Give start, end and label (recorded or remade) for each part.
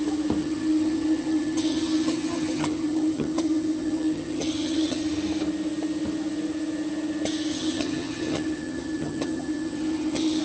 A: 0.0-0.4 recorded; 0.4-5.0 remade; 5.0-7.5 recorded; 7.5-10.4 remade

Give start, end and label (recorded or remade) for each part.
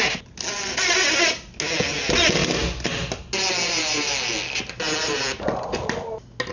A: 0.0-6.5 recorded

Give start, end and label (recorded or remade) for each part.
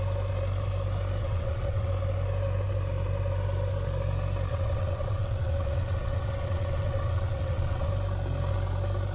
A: 0.0-1.2 recorded; 1.2-1.9 remade; 1.9-4.5 recorded; 4.5-7.9 remade; 7.9-9.1 recorded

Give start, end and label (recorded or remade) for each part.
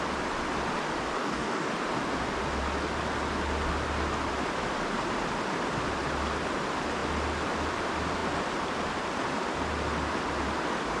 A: 0.0-1.2 recorded; 1.2-1.7 remade; 1.7-11.0 recorded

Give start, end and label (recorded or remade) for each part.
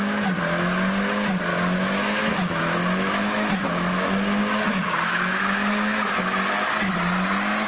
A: 0.0-1.5 recorded; 1.5-6.1 remade; 6.1-7.7 recorded